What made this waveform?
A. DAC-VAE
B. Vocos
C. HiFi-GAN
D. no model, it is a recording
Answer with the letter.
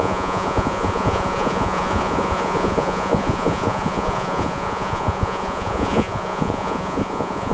B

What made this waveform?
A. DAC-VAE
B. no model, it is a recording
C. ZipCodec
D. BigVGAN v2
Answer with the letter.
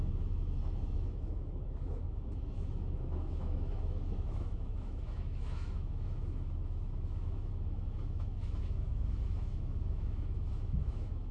A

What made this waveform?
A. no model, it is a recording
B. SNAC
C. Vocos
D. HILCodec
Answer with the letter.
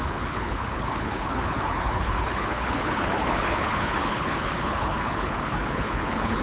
D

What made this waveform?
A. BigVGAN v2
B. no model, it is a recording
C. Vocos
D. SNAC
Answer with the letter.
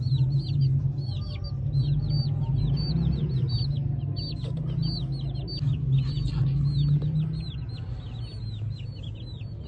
B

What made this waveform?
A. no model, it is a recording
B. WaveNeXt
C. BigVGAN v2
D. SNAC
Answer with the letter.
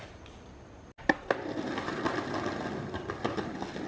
A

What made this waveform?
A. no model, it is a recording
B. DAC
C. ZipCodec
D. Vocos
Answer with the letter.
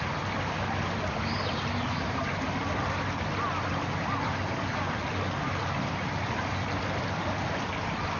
A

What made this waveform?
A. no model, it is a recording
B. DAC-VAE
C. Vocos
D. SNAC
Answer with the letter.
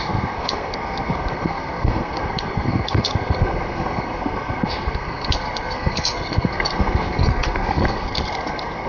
D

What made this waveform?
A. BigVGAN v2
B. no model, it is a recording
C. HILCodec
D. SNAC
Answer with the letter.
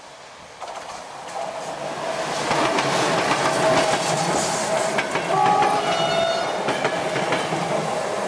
B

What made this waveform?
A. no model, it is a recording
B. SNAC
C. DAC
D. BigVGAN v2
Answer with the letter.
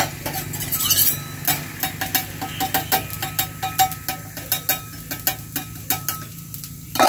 A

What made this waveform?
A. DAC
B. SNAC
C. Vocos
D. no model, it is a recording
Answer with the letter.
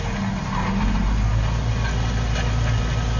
D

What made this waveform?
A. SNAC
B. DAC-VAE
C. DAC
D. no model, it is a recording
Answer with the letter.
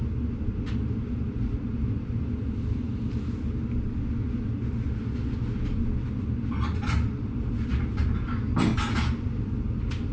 D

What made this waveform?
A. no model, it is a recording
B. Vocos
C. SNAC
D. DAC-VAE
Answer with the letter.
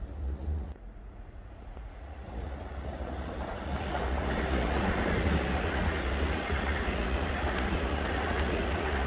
B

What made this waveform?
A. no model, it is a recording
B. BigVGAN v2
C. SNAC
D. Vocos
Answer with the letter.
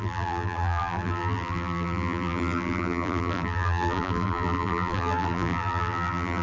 B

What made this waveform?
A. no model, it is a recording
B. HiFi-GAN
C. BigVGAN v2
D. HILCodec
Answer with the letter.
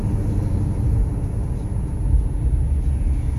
A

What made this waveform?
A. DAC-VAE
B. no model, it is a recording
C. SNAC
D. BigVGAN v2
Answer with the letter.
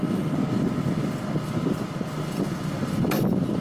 B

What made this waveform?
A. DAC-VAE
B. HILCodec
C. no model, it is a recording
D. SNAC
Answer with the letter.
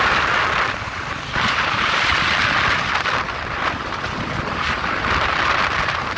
C